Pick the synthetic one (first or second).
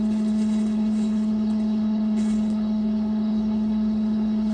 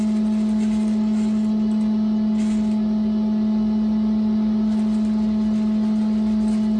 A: first